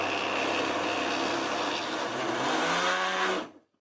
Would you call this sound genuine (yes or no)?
yes